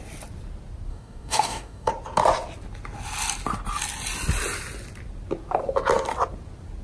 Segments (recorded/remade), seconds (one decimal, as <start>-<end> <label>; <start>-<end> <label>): 0.0-0.9 recorded; 0.9-1.9 remade; 1.9-6.8 recorded